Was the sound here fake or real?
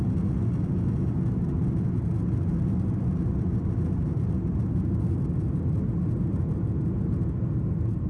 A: real